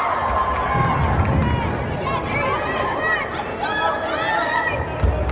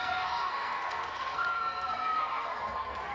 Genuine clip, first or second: first